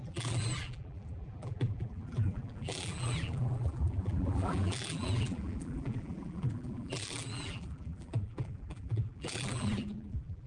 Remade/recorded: remade